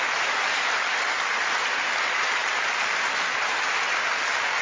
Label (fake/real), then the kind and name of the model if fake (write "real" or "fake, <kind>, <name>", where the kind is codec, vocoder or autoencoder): real